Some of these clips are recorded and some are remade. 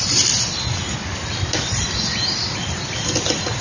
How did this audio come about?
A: recorded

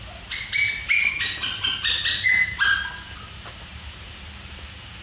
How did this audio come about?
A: recorded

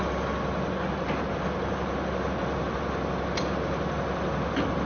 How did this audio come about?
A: recorded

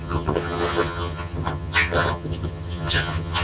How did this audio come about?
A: remade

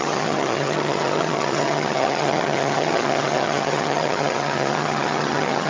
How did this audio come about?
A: remade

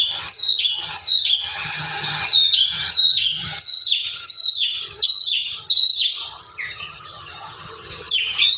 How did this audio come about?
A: remade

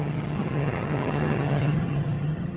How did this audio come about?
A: remade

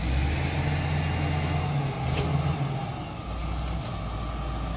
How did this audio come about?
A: recorded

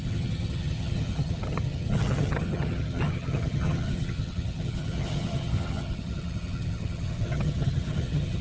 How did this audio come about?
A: remade